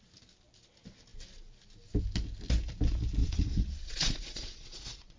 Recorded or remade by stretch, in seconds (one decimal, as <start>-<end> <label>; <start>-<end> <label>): 0.0-3.2 recorded; 3.2-5.2 remade

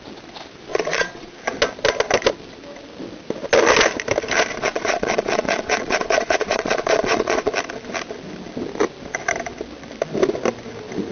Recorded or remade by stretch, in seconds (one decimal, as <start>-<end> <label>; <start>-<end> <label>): 0.0-0.7 recorded; 0.7-1.3 remade; 1.3-4.5 recorded; 4.5-7.5 remade; 7.5-11.1 recorded

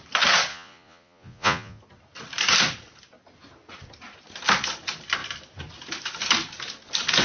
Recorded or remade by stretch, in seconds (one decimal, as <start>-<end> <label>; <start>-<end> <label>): 0.0-0.5 recorded; 0.5-1.8 remade; 1.8-7.2 recorded

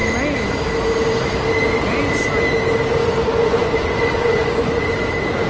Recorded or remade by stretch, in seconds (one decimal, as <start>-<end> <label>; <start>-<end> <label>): 0.0-3.0 recorded; 3.0-5.0 remade; 5.0-5.5 recorded